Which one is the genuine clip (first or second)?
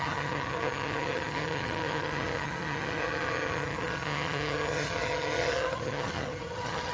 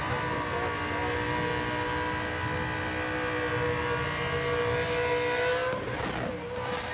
second